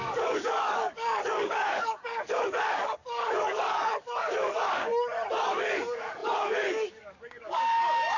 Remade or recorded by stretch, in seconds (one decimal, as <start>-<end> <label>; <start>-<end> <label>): 0.0-4.9 remade; 4.9-5.4 recorded; 5.4-8.2 remade

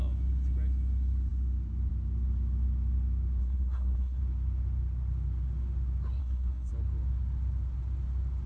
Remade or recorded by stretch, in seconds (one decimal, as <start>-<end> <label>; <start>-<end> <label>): 0.0-3.4 recorded; 3.4-4.2 remade; 4.2-6.2 recorded; 6.2-6.7 remade; 6.7-8.5 recorded

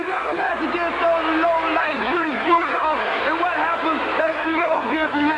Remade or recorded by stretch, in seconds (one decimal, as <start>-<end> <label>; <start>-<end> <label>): 0.0-0.5 remade; 0.5-1.8 recorded; 1.8-3.2 remade; 3.2-4.2 recorded; 4.2-5.4 remade

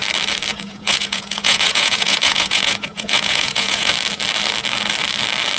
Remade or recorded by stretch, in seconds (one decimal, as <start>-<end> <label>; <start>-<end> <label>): 0.0-0.5 recorded; 0.5-3.9 remade; 3.9-5.6 recorded

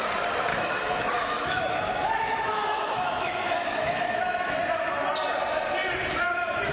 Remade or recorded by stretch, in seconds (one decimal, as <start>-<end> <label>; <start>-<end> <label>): 0.0-0.5 recorded; 0.5-4.5 remade; 4.5-6.7 recorded